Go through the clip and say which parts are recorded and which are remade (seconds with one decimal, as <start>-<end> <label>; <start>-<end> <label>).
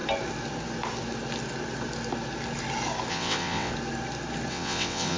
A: 0.0-3.1 recorded; 3.1-3.7 remade; 3.7-4.5 recorded; 4.5-5.2 remade